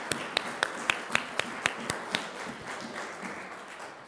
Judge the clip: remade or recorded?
recorded